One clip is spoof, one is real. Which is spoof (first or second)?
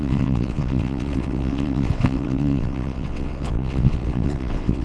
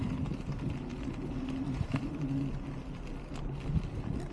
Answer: first